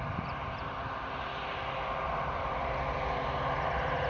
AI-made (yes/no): no